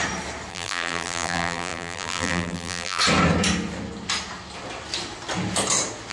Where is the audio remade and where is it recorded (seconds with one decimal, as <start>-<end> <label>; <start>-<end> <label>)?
0.0-0.5 recorded; 0.5-3.0 remade; 3.0-6.1 recorded

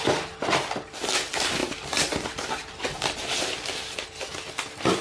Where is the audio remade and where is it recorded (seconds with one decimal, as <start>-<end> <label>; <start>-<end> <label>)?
0.0-1.6 recorded; 1.6-4.3 remade; 4.3-5.0 recorded

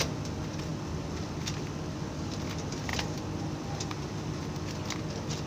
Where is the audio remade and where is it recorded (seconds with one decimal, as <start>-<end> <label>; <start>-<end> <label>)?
0.0-5.5 recorded

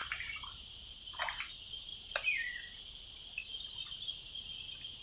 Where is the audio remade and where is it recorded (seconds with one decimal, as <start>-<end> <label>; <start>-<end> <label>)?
0.0-1.2 remade; 1.2-5.0 recorded

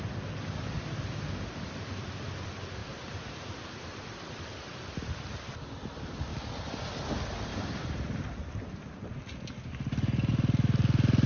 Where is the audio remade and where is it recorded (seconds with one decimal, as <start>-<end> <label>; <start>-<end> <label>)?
0.0-2.8 recorded; 2.8-3.6 remade; 3.6-7.5 recorded; 7.5-8.4 remade; 8.4-11.3 recorded

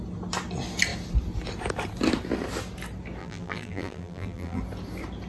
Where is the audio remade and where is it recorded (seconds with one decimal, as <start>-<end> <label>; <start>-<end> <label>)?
0.0-3.2 recorded; 3.2-4.6 remade; 4.6-5.3 recorded

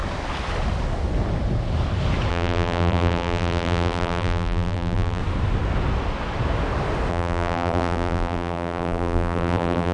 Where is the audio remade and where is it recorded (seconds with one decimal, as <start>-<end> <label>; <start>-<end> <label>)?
0.0-2.3 recorded; 2.3-5.2 remade; 5.2-7.1 recorded; 7.1-9.9 remade

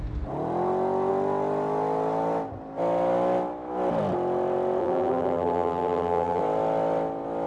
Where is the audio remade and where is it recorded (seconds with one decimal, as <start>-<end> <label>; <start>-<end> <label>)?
0.0-4.8 recorded; 4.8-6.4 remade; 6.4-7.5 recorded